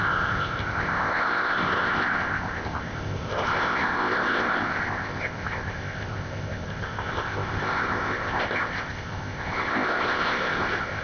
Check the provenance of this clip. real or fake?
fake